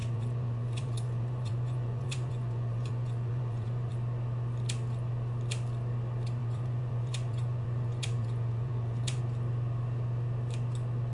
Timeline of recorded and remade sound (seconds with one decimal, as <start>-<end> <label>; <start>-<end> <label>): 0.0-3.9 remade; 3.9-6.4 recorded; 6.4-9.2 remade; 9.2-11.1 recorded